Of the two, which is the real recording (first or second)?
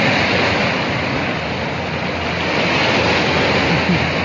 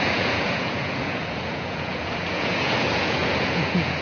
first